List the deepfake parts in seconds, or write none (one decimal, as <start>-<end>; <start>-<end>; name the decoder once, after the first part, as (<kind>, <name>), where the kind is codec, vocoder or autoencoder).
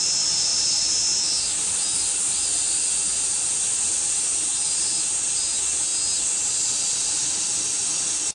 none